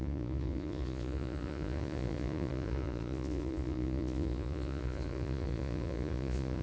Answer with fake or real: fake